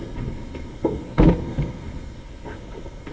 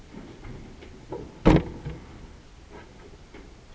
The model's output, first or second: first